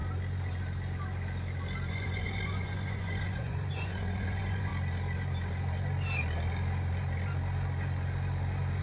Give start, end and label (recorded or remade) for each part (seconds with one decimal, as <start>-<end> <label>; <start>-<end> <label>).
0.0-1.9 recorded; 1.9-4.7 remade; 4.7-8.8 recorded